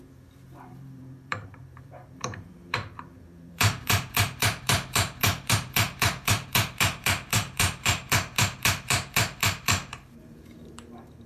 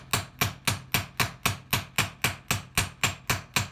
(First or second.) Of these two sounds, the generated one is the first